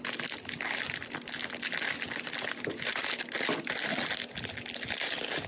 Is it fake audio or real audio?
real